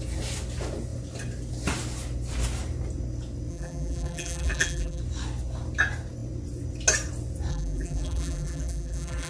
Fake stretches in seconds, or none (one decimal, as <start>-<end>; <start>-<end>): 3.5-5.0; 7.5-9.3